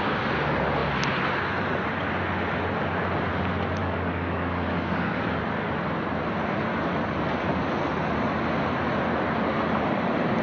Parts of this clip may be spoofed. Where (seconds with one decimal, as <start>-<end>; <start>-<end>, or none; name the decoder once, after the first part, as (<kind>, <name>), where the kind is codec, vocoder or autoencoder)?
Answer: 3.8-5.4 (codec, DAC)